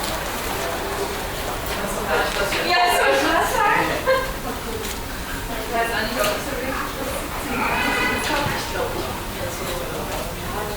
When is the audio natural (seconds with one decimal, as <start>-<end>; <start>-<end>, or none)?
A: 0.0-5.3; 9.7-10.8

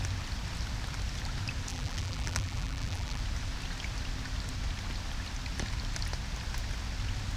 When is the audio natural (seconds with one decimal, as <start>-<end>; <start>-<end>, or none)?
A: 0.0-1.7; 3.2-7.4

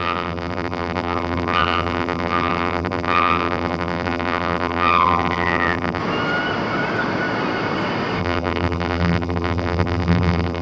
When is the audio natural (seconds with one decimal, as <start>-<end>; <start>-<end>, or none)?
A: 6.0-8.2

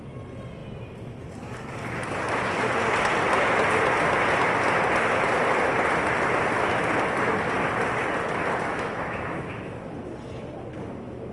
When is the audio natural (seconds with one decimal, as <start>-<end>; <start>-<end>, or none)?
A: 0.0-8.7; 9.7-11.3